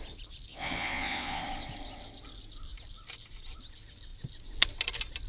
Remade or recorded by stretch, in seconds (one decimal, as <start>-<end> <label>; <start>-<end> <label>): 0.0-0.5 recorded; 0.5-1.4 remade; 1.4-5.3 recorded